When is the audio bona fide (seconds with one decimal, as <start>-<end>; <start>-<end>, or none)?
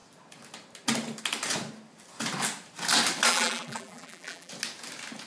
0.0-3.3; 4.5-5.3